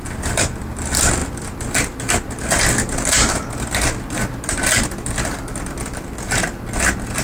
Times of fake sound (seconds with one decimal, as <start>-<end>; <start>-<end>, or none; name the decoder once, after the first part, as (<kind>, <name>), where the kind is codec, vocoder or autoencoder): none